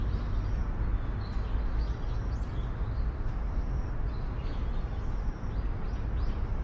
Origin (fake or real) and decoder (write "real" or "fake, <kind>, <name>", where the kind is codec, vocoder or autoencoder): real